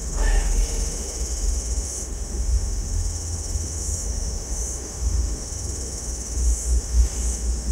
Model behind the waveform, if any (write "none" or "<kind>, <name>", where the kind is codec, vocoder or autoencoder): autoencoder, DAC-VAE